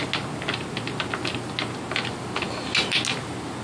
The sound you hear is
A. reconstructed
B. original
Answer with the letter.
B